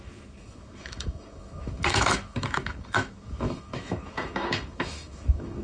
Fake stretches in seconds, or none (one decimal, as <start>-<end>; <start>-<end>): 0.0-5.6